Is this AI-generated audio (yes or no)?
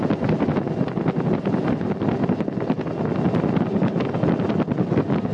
no